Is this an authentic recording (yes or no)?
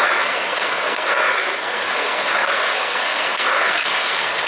no